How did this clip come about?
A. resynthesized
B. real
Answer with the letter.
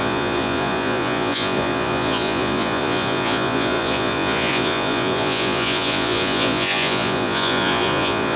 A